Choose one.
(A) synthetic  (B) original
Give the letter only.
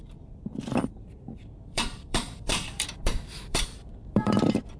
A